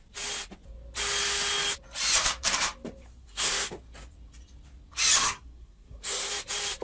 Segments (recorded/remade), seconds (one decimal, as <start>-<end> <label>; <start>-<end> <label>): 0.0-3.2 recorded; 3.2-3.7 remade; 3.7-5.2 recorded; 5.2-6.3 remade; 6.3-6.8 recorded